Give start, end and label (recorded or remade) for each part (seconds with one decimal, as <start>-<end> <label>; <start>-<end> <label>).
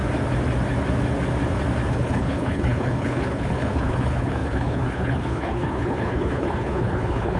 0.0-1.9 recorded; 1.9-7.4 remade